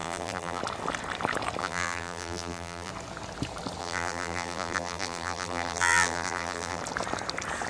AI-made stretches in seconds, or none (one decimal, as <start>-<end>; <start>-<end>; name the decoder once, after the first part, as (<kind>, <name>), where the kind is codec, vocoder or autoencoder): 0.0-0.6 (vocoder, BigVGAN v2); 1.6-2.9; 3.8-6.8

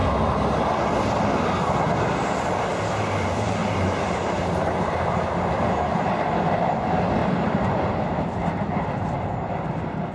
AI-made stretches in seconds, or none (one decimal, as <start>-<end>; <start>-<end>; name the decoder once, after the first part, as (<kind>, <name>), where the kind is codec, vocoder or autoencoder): 3.6-6.1 (vocoder, BigVGAN v2); 7.2-10.1

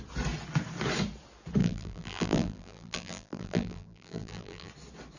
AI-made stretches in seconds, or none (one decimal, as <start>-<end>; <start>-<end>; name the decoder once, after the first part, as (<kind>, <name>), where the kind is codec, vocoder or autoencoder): 1.6-4.7 (vocoder, BigVGAN v2)

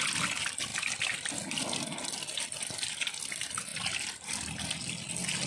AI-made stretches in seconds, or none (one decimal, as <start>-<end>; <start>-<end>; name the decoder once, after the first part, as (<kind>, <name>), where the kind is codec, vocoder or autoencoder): 0.7-3.3 (vocoder, BigVGAN v2); 3.7-4.4

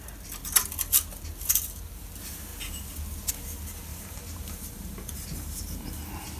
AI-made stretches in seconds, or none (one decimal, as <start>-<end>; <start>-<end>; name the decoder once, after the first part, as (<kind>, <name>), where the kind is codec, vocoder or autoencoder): 3.9-6.0 (vocoder, BigVGAN v2)

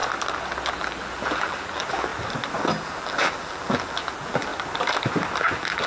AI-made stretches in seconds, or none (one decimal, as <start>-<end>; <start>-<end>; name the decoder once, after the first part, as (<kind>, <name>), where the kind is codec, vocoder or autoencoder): 0.7-2.1 (vocoder, BigVGAN v2); 2.7-4.5; 5.4-5.9

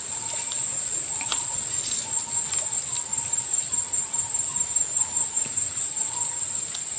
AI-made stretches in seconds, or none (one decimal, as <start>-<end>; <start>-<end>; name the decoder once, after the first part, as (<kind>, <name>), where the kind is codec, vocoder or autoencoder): 4.5-5.8 (vocoder, BigVGAN v2)

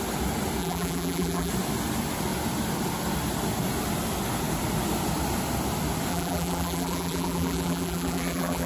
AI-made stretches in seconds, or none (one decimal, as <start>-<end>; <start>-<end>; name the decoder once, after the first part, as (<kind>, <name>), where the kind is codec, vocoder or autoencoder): 0.6-1.5 (vocoder, BigVGAN v2); 6.1-8.7